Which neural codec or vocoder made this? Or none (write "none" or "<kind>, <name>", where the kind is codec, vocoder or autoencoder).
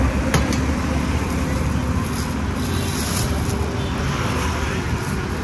none